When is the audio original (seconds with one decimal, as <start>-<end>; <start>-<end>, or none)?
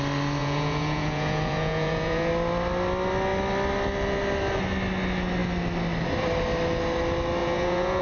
0.0-0.4; 2.3-7.4